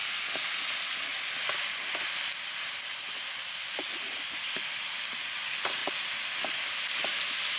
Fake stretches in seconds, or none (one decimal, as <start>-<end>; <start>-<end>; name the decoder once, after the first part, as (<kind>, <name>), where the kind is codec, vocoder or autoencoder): none